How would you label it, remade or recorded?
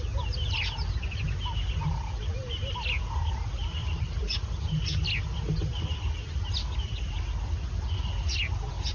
recorded